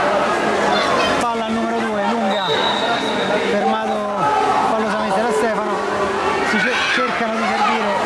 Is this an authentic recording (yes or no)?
yes